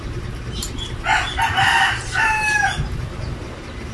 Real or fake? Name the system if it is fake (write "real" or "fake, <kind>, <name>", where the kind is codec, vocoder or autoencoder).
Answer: fake, vocoder, BigVGAN v2